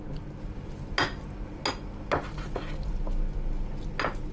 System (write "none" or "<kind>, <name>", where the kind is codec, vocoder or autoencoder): none